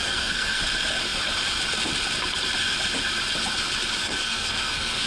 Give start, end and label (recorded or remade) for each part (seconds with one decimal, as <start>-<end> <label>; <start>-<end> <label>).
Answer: 0.0-0.6 remade; 0.6-4.0 recorded; 4.0-5.1 remade

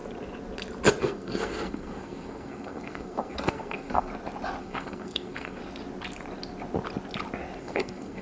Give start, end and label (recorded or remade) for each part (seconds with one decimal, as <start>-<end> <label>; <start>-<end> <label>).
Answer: 0.0-1.0 recorded; 1.0-4.1 remade; 4.1-4.6 recorded; 4.6-5.6 remade; 5.6-7.6 recorded; 7.6-8.2 remade

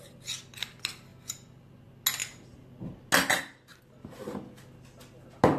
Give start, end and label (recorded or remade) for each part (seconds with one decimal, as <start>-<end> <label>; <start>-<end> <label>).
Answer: 0.0-5.6 recorded

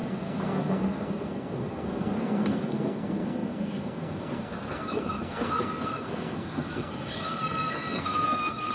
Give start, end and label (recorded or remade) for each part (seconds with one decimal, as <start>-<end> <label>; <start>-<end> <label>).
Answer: 0.0-8.7 remade

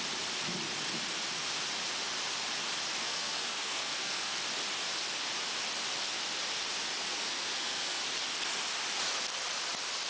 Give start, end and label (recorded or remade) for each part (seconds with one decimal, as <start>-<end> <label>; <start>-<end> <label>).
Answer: 0.0-3.0 recorded; 3.0-4.4 remade; 4.4-7.1 recorded; 7.1-8.0 remade; 8.0-10.1 recorded